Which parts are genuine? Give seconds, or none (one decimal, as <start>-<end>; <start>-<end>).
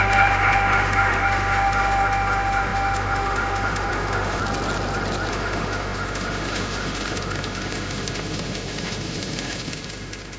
4.4-5.3